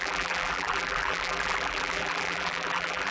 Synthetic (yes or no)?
yes